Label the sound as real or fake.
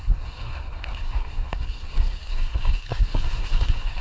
fake